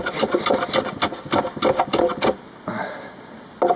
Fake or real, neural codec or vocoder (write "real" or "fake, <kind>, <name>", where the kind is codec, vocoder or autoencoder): real